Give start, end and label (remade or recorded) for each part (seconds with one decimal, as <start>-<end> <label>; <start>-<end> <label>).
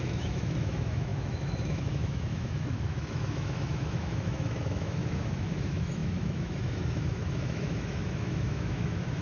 0.0-9.2 remade